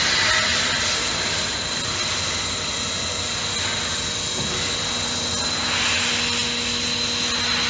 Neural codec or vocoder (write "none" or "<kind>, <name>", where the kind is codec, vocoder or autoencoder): none